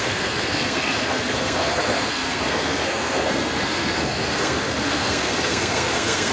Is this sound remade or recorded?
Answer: remade